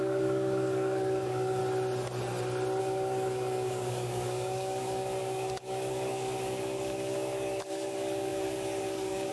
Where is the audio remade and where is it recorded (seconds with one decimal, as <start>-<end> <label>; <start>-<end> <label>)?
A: 0.0-1.6 remade; 1.6-2.8 recorded; 2.8-9.3 remade